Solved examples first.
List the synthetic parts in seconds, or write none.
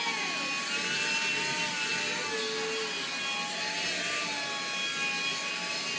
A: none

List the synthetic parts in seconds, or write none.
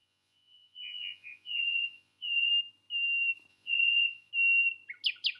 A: 0.0-2.5 (vocoder, Vocos); 3.5-4.3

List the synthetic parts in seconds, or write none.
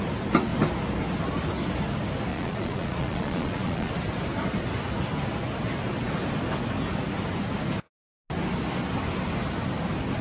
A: 2.3-3.9 (vocoder, Vocos)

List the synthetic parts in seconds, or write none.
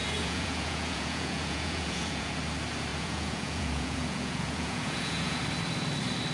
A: 0.0-2.3 (vocoder, Vocos); 2.9-5.4